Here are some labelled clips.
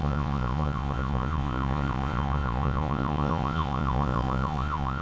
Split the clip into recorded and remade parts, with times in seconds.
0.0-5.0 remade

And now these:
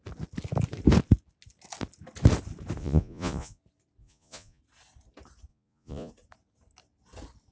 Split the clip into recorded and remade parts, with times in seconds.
0.0-2.8 recorded; 2.8-3.6 remade; 3.6-4.0 recorded; 4.0-4.6 remade; 4.6-5.5 recorded; 5.5-6.1 remade; 6.1-7.5 recorded

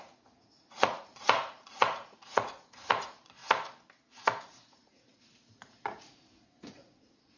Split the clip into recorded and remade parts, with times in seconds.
0.0-3.4 remade; 3.4-4.4 recorded; 4.4-7.4 remade